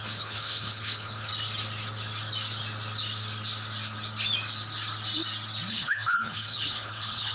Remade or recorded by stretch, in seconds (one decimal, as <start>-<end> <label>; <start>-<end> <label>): 0.0-1.3 remade; 1.3-5.7 recorded; 5.7-7.3 remade

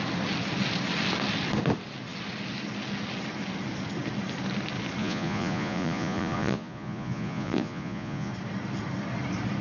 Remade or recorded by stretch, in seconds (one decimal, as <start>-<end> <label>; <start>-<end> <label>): 0.0-5.0 recorded; 5.0-8.3 remade; 8.3-9.6 recorded